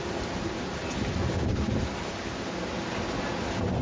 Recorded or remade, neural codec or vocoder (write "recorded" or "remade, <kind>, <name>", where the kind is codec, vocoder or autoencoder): recorded